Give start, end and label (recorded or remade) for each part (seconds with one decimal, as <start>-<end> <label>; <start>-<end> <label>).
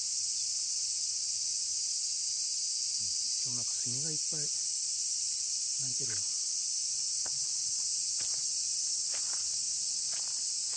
0.0-10.8 recorded